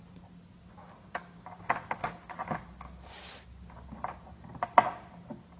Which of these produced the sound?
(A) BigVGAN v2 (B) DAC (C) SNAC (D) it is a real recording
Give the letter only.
D